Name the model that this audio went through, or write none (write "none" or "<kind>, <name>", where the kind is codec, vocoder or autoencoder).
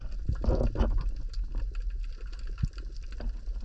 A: none